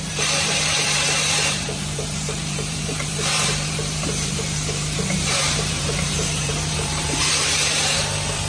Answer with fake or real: fake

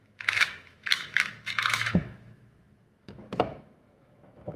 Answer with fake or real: fake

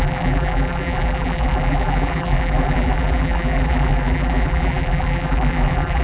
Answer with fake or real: fake